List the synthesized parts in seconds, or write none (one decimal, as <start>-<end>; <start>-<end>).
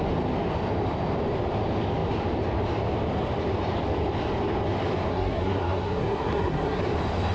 5.1-6.8